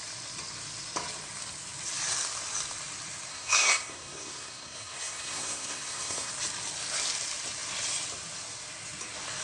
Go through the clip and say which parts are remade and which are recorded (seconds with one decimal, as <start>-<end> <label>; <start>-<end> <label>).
0.0-3.3 recorded; 3.3-6.3 remade; 6.3-9.4 recorded